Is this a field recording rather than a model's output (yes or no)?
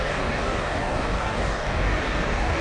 no